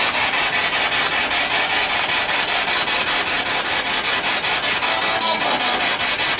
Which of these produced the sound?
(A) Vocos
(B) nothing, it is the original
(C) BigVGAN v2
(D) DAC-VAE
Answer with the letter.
B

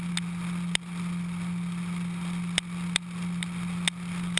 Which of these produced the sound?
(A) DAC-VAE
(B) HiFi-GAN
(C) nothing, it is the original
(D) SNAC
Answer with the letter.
C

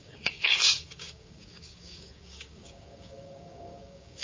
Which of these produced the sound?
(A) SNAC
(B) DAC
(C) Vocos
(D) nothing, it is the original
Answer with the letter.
B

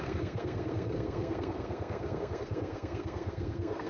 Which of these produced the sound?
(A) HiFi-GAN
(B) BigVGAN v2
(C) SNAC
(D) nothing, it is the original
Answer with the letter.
C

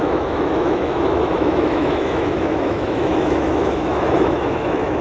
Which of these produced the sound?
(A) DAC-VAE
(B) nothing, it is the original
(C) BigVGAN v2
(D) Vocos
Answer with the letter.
A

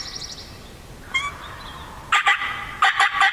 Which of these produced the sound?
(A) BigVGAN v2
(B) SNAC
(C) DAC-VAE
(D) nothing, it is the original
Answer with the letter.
D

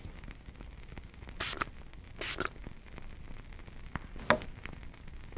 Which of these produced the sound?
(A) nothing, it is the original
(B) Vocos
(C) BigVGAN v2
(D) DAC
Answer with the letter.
A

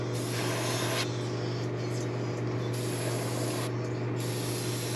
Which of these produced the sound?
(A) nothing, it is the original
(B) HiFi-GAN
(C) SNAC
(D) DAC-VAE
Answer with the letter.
A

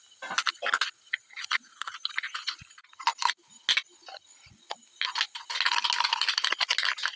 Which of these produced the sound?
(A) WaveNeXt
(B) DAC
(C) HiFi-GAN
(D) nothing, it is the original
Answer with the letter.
D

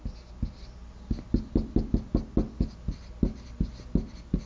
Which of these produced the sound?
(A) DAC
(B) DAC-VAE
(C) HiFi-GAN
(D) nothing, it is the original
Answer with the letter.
D